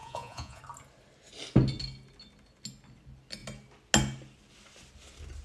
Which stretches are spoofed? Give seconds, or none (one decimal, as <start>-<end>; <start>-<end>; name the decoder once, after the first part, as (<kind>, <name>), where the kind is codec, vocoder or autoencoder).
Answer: 0.0-0.6 (vocoder, Vocos)